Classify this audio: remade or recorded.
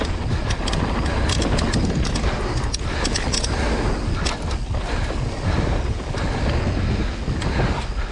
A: recorded